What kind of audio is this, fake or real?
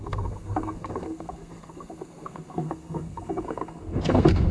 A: fake